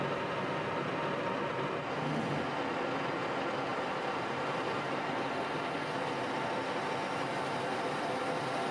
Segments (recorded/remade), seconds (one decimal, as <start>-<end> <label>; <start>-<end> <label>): 0.0-3.7 recorded; 3.7-5.4 remade; 5.4-7.3 recorded; 7.3-8.2 remade; 8.2-8.7 recorded